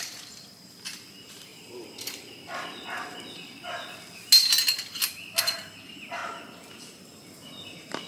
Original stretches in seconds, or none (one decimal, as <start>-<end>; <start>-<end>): 1.5-5.4; 6.2-7.0